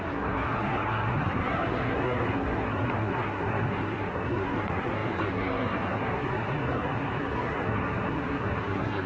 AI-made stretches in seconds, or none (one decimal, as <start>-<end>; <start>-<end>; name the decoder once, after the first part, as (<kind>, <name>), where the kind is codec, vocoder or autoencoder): 0.0-9.1 (codec, SNAC)